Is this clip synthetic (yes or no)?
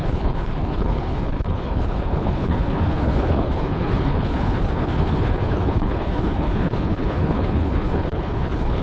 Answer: yes